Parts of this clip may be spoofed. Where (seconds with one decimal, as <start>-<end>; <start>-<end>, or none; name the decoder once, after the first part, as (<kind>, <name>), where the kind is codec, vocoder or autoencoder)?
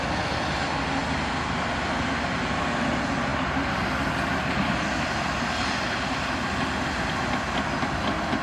none